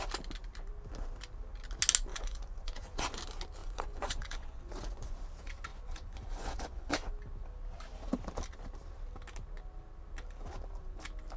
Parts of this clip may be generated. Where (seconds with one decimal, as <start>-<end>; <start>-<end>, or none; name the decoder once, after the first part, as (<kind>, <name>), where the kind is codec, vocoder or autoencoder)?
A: 2.1-3.2 (vocoder, Vocos); 3.6-5.2; 5.7-7.1